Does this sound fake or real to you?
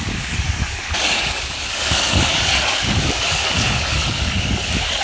fake